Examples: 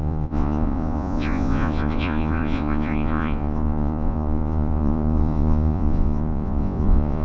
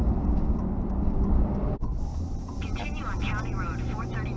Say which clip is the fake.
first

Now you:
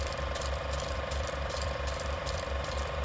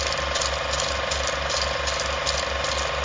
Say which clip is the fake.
first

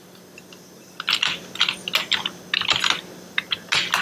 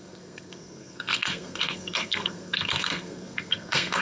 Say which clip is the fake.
second